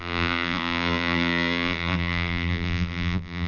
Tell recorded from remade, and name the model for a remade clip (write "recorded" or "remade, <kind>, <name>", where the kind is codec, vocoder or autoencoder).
remade, vocoder, BigVGAN v2